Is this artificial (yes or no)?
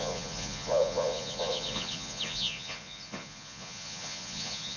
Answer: yes